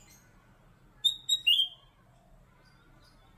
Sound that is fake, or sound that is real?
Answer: real